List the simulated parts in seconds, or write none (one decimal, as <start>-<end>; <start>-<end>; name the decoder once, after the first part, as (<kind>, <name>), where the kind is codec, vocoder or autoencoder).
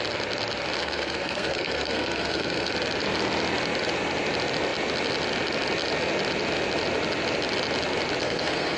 0.8-2.7 (codec, SNAC); 8.2-8.8